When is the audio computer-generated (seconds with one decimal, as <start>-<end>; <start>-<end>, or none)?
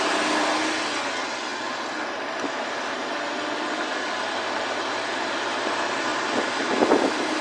none